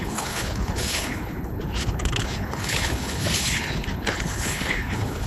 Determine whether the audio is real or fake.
fake